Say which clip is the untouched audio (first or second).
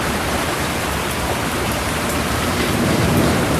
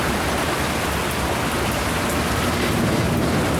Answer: second